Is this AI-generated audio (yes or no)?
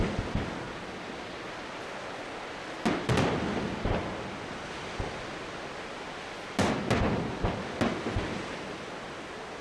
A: no